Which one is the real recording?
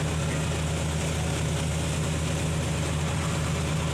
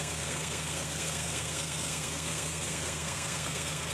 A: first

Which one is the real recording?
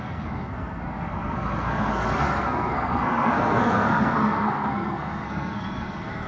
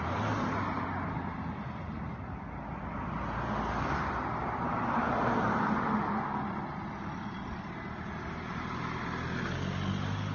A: second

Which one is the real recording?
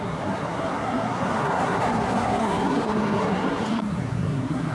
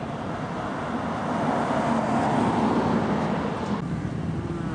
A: second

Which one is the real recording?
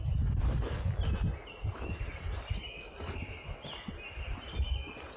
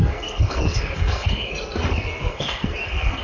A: first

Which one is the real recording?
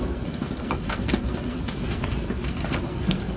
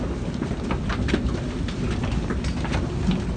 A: second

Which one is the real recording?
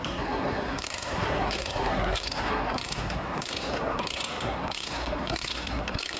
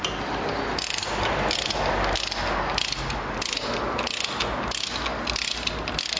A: second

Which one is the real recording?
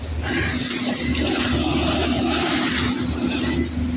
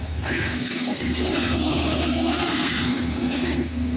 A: first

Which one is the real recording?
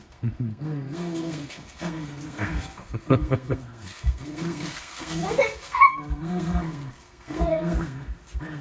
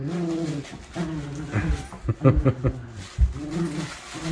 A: second